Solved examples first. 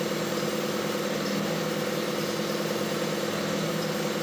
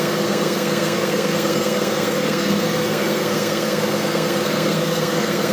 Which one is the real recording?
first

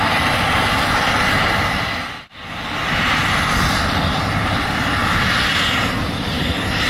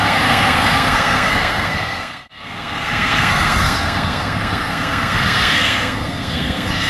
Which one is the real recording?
first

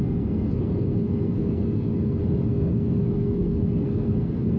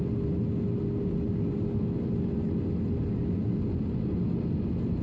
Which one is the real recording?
second